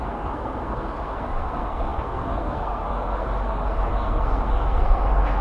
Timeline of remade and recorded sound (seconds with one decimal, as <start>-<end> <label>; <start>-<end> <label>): 0.0-5.4 remade